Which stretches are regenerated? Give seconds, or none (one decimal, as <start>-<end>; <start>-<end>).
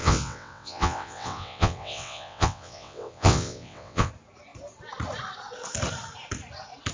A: 0.0-4.1